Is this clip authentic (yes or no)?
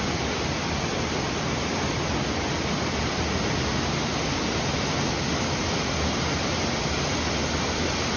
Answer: yes